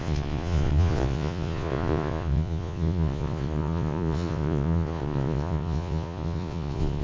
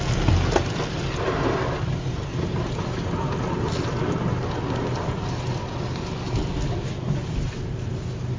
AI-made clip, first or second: first